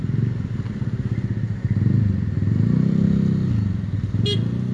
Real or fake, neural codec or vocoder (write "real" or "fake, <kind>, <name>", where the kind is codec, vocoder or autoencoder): real